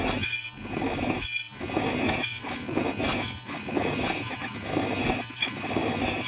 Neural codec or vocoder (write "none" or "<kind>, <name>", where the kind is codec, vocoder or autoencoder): autoencoder, DAC-VAE